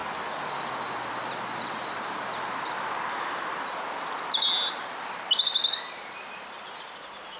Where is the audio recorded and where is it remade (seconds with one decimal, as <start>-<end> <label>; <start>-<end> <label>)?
0.0-7.4 recorded